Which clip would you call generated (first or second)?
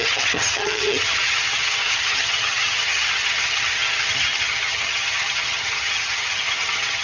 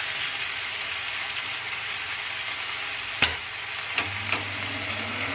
first